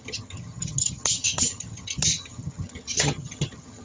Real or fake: fake